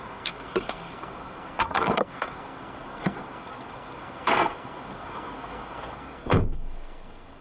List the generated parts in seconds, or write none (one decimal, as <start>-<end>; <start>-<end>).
0.0-7.4